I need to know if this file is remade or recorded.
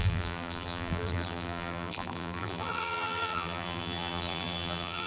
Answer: remade